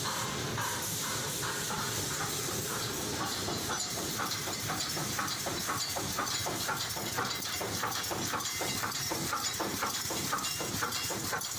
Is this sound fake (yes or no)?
yes